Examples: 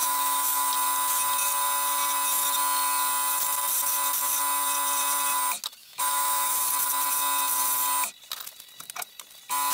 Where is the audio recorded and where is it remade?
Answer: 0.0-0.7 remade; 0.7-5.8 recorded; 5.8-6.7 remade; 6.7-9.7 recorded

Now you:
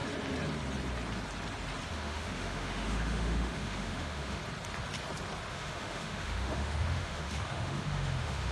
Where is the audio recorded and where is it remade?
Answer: 0.0-1.9 recorded; 1.9-4.4 remade; 4.4-5.5 recorded; 5.5-8.5 remade

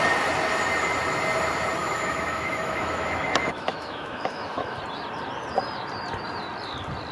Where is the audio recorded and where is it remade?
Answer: 0.0-1.8 recorded; 1.8-4.8 remade; 4.8-7.1 recorded